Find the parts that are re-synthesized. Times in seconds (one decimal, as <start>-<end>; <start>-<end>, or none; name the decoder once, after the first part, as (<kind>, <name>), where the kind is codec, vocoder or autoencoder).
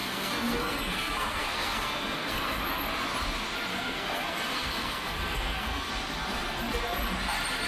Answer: 0.0-2.6 (codec, SNAC); 3.7-5.9